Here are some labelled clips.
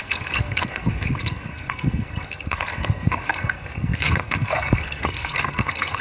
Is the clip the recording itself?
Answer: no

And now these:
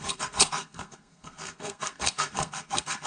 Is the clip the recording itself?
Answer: no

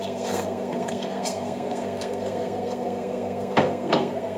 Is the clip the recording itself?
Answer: no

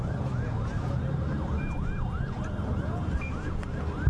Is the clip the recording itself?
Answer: yes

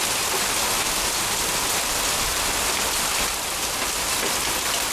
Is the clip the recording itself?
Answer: yes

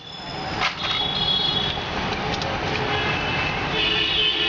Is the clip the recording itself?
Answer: yes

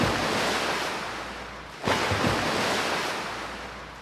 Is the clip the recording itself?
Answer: yes